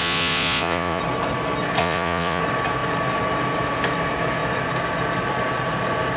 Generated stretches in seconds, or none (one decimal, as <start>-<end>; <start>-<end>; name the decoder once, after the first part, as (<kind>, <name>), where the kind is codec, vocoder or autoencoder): 0.0-1.0 (vocoder, Vocos); 1.8-2.4